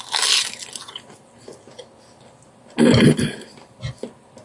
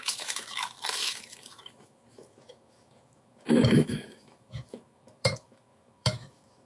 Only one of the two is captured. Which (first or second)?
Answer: first